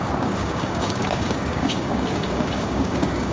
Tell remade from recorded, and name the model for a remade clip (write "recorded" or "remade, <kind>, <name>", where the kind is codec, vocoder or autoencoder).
remade, codec, DAC